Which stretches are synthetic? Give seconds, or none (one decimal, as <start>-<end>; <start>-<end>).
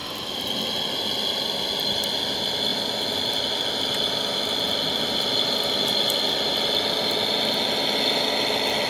none